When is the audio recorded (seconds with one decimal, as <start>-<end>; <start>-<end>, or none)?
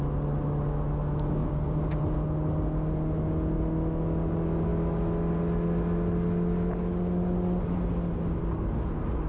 0.0-1.4; 2.0-9.3